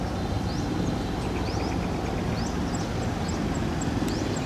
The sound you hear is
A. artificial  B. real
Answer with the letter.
B